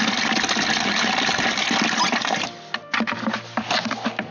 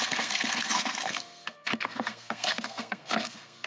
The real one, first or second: first